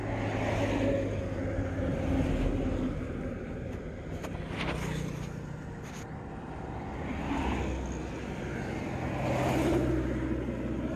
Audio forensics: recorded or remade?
recorded